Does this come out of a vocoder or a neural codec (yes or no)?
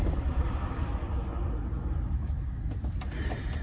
no